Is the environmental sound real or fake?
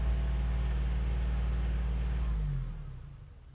real